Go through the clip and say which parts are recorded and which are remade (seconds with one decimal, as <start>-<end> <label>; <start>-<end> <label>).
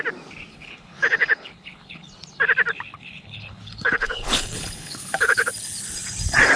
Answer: 0.0-0.5 recorded; 0.5-2.1 remade; 2.1-2.9 recorded; 2.9-5.5 remade; 5.5-6.6 recorded